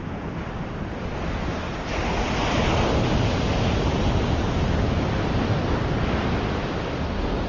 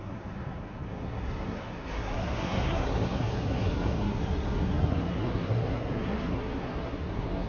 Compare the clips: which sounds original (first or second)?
first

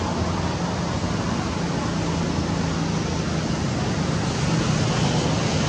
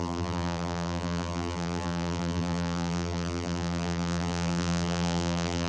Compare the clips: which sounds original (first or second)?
first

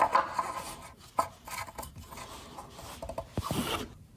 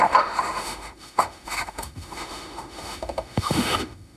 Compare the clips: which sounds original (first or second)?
first